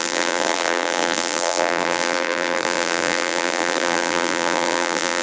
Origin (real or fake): fake